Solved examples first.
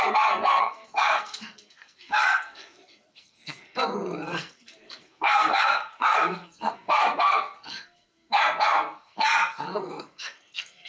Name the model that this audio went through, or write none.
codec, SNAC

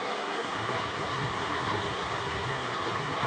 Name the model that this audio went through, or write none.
codec, SNAC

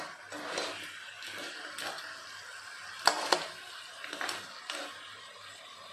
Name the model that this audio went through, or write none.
none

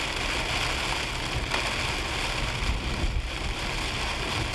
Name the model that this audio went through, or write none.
none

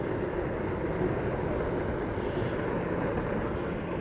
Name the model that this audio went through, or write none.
none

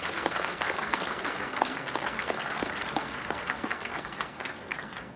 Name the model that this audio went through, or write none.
codec, SNAC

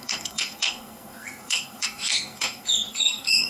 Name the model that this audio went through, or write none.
codec, SNAC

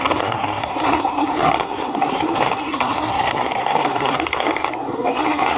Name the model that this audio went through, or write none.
codec, SNAC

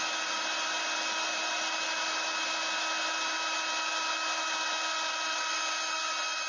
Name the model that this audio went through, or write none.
none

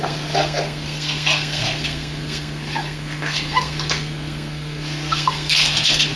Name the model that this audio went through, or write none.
codec, SNAC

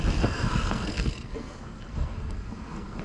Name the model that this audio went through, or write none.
codec, SNAC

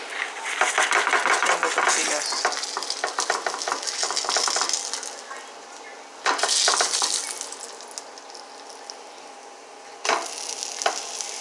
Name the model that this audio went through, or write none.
none